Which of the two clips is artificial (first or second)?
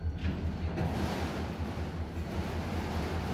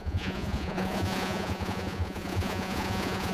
second